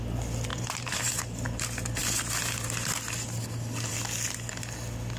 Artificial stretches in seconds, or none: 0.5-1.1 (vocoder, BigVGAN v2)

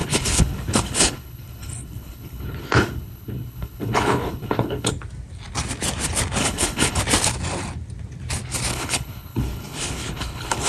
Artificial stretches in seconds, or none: 0.0-4.9 (codec, HILCodec); 6.4-7.0; 8.7-10.7

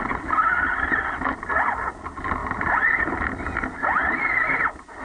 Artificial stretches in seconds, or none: 2.4-3.0 (vocoder, BigVGAN v2)